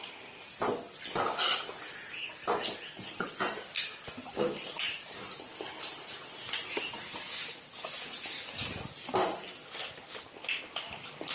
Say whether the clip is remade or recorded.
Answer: recorded